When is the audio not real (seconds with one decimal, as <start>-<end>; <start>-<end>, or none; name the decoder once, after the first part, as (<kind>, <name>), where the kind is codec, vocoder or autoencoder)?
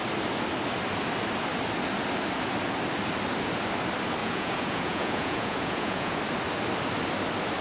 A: 4.2-6.2 (vocoder, Vocos)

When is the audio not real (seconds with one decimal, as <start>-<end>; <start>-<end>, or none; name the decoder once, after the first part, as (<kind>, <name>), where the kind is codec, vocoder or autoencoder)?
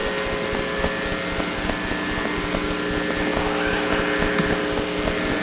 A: none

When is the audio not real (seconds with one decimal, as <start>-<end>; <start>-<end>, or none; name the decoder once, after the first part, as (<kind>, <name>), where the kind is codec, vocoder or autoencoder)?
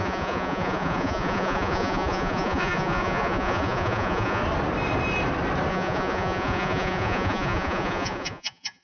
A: 0.0-4.4 (vocoder, Vocos); 5.7-8.8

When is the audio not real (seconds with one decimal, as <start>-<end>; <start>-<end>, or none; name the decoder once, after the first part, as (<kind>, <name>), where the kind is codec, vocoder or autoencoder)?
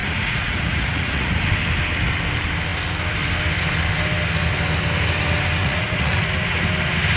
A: 0.0-1.4 (vocoder, Vocos); 5.6-6.3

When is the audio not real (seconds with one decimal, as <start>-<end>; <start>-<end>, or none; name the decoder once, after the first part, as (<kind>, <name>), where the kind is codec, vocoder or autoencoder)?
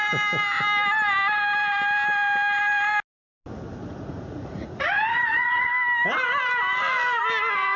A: 3.8-5.7 (vocoder, Vocos)